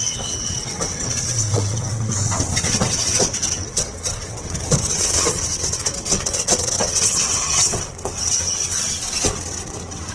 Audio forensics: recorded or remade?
remade